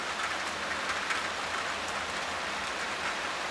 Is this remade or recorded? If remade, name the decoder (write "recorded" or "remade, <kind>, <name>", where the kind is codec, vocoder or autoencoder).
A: recorded